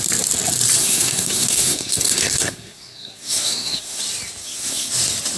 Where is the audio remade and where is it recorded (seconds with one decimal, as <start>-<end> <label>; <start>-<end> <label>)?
0.0-0.8 recorded; 0.8-4.0 remade; 4.0-4.4 recorded; 4.4-4.9 remade; 4.9-5.4 recorded